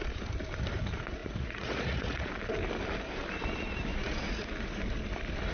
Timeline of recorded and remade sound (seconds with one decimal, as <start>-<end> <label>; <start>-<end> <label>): 0.0-1.2 recorded; 1.2-2.3 remade; 2.3-3.9 recorded; 3.9-4.5 remade; 4.5-5.5 recorded